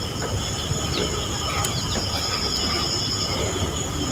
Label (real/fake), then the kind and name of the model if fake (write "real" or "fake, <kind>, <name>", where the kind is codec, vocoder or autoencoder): real